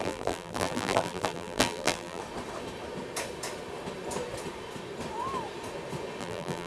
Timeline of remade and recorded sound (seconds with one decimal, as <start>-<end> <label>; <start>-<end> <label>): 0.0-2.2 remade; 2.2-6.2 recorded; 6.2-6.7 remade